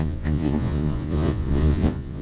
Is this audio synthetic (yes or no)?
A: yes